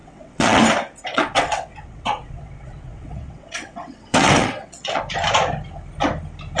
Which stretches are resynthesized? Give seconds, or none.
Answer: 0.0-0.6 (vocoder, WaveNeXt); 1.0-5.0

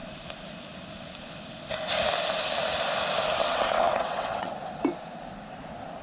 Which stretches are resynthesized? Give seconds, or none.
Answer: 3.4-4.5 (vocoder, WaveNeXt)

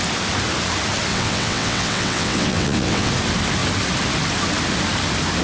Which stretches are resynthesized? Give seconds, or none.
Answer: 1.1-3.1 (vocoder, WaveNeXt)

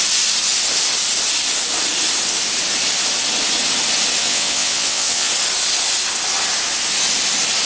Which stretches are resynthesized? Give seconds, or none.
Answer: 4.2-5.3 (vocoder, WaveNeXt)

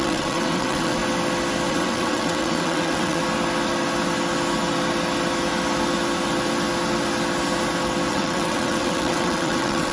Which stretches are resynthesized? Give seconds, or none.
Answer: 0.0-1.0 (vocoder, WaveNeXt); 1.7-3.2; 8.1-9.9

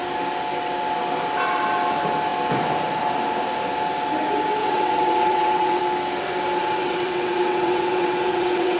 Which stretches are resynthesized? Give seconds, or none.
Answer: 4.6-5.8 (vocoder, WaveNeXt); 6.6-8.8

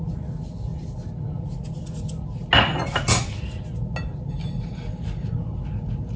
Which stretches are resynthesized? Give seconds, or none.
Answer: none